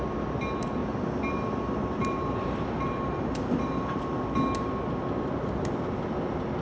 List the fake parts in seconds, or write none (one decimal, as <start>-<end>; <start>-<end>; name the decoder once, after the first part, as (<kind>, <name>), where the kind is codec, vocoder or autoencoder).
0.8-4.0 (vocoder, BigVGAN v2)